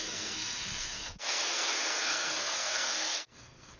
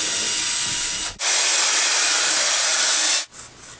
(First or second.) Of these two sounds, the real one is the second